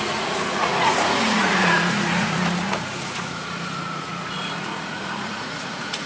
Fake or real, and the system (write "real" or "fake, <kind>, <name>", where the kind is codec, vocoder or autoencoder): fake, vocoder, Vocos